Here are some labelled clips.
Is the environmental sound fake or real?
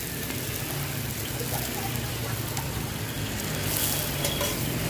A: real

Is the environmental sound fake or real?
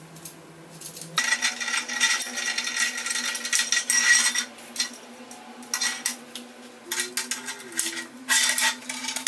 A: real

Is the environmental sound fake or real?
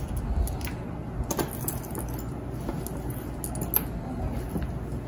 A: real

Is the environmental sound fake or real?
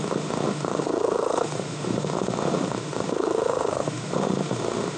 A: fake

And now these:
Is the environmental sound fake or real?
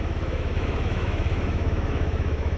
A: fake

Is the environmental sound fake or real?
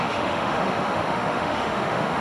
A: fake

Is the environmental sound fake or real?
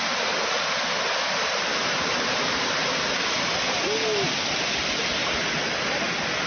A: real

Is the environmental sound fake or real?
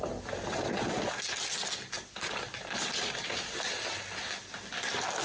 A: real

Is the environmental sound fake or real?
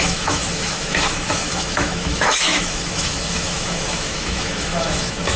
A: fake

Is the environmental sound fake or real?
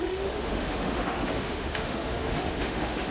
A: fake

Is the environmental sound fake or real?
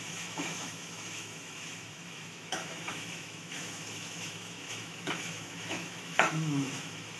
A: fake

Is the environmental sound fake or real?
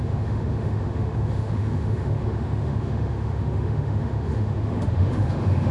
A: fake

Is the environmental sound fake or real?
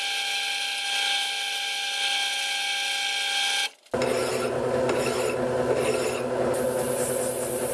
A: real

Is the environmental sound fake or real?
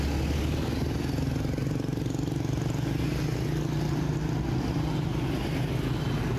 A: real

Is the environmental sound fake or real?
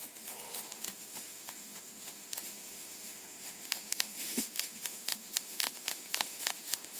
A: fake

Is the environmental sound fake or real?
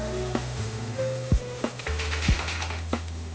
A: fake